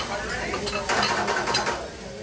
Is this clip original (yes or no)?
yes